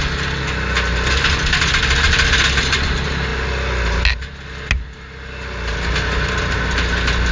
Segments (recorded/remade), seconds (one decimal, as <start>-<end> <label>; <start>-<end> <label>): 0.0-7.3 recorded